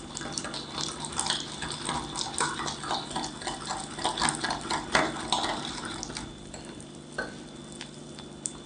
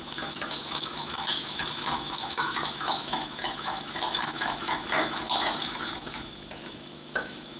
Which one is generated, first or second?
second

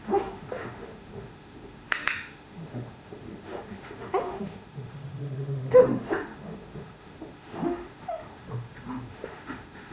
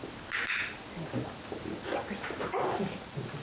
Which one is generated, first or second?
first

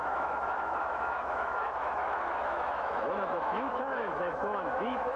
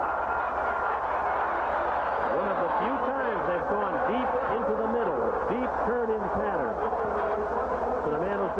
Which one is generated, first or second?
first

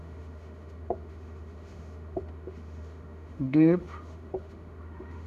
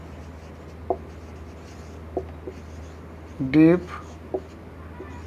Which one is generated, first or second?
first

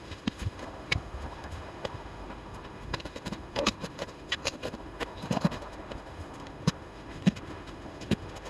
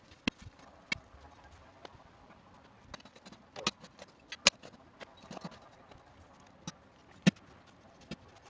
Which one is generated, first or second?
first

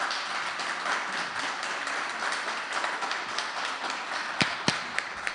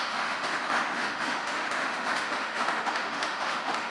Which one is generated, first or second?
second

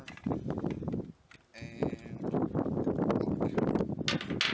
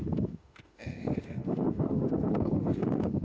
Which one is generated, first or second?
second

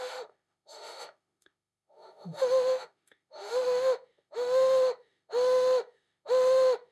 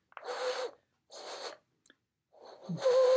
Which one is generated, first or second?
first